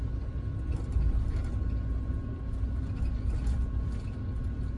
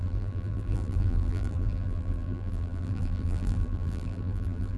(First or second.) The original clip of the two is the first